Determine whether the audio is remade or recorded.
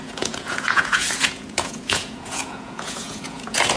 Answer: remade